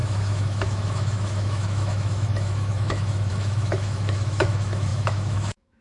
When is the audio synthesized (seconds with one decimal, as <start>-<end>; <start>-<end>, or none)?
0.0-5.8